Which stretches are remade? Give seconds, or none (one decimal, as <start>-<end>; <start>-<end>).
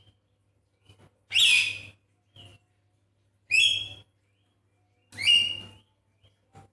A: none